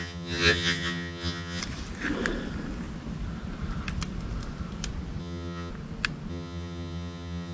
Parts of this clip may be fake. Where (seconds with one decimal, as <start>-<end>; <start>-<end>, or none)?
0.0-1.6; 5.2-5.7; 6.3-7.5